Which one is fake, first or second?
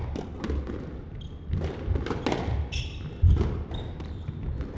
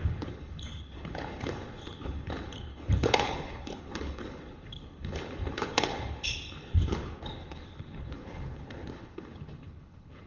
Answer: second